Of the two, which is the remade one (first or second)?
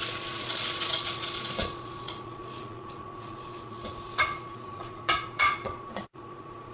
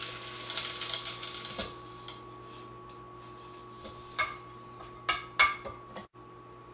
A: first